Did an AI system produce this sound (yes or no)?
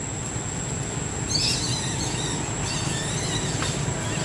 no